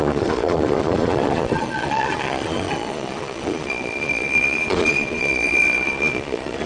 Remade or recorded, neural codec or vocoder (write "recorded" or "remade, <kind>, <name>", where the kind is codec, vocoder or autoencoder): remade, vocoder, Vocos